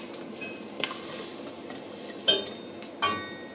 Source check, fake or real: real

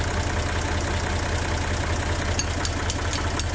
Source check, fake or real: real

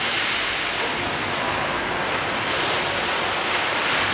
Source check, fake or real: real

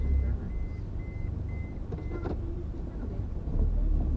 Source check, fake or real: real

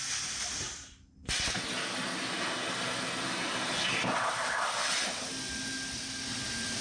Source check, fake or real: real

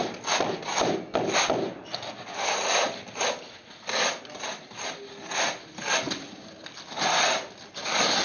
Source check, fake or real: real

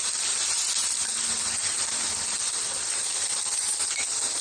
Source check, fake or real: real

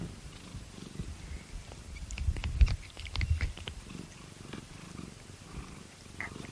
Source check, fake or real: fake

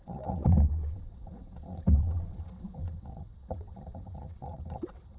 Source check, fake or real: fake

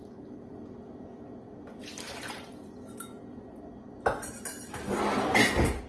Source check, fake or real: real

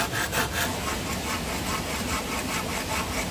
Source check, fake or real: real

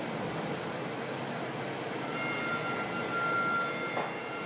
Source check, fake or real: real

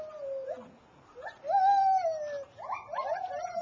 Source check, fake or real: real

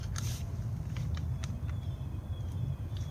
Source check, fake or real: real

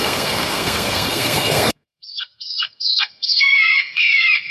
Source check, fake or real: fake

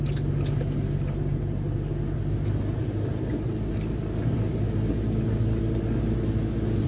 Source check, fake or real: real